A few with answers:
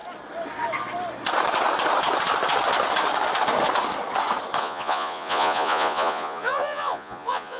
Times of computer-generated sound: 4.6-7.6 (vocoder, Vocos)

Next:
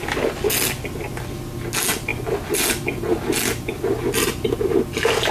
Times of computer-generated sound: none

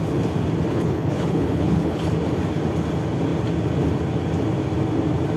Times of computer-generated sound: 0.7-2.1 (codec, HILCodec)

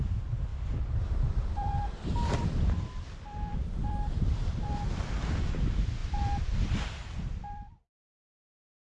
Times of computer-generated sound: 0.5-4.7 (vocoder, BigVGAN v2); 6.0-8.9

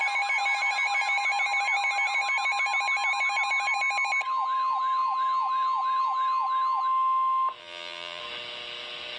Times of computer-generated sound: 7.6-8.2 (vocoder, BigVGAN v2)

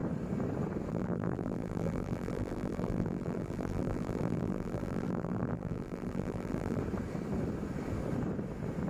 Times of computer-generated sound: 0.9-6.8 (vocoder, BigVGAN v2)

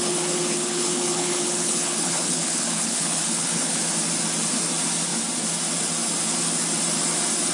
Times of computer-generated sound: 0.0-3.8 (codec, HILCodec)

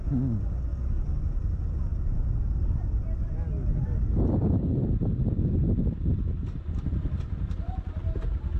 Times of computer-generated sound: none